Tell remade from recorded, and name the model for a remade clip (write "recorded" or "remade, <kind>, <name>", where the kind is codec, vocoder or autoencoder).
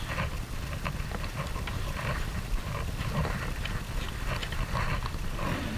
remade, vocoder, BigVGAN v2